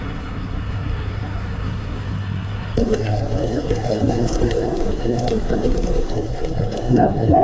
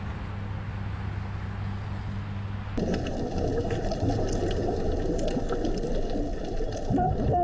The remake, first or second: first